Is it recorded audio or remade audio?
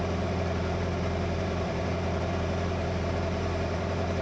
remade